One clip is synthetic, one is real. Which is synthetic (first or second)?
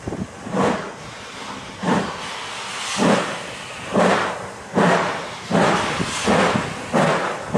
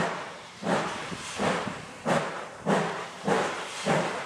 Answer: second